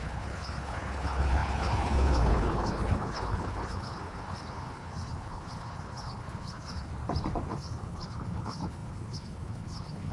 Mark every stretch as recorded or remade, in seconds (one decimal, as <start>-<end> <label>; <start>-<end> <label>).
0.0-6.9 remade; 6.9-7.5 recorded; 7.5-10.1 remade